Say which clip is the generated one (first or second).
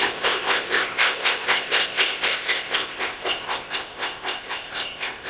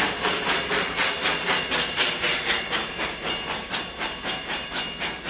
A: first